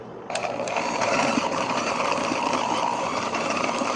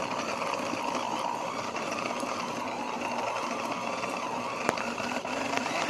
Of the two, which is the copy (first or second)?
first